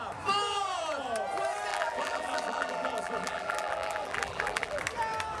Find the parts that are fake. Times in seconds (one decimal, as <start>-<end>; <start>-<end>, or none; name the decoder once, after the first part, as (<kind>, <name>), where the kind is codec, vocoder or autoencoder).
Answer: 1.7-4.8 (vocoder, BigVGAN v2)